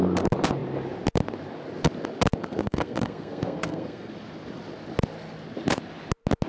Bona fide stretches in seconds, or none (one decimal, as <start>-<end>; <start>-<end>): 0.0-2.4; 4.1-6.5